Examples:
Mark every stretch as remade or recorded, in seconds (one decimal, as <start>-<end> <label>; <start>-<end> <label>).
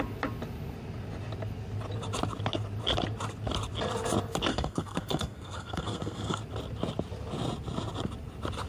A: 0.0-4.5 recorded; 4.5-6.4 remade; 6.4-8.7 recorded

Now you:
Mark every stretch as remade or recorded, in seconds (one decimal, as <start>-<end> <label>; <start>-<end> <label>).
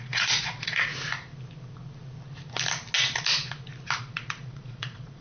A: 0.0-0.9 remade; 0.9-4.0 recorded; 4.0-5.2 remade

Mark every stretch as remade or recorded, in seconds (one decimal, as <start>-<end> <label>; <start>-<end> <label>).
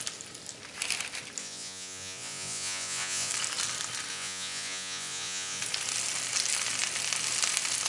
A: 0.0-1.4 recorded; 1.4-3.3 remade; 3.3-4.1 recorded; 4.1-5.6 remade; 5.6-7.9 recorded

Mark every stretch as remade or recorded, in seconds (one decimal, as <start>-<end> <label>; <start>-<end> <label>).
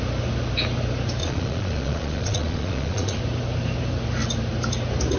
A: 0.0-1.2 recorded; 1.2-3.2 remade; 3.2-5.2 recorded